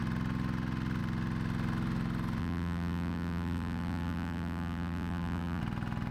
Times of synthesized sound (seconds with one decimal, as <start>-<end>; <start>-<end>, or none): 2.4-5.6